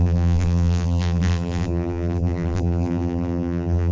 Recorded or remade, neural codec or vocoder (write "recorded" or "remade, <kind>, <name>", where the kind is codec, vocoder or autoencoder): remade, vocoder, BigVGAN v2